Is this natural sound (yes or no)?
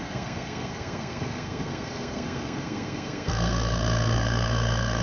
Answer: no